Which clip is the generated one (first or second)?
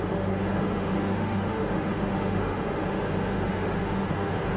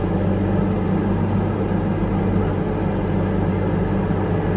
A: first